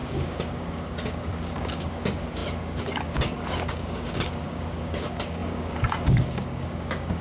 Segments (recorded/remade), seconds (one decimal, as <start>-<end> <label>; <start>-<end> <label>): 0.0-7.2 remade